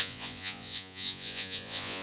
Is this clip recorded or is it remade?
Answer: remade